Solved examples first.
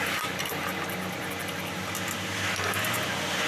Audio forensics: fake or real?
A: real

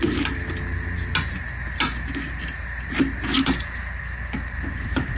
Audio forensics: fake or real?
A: real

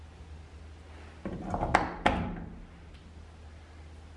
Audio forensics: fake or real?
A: real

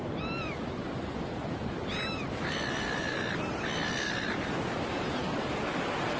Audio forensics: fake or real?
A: real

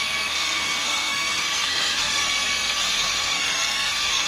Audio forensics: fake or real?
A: fake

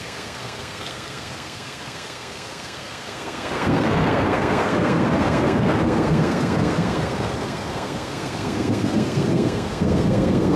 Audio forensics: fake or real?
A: fake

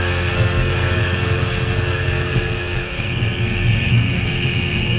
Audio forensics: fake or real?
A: fake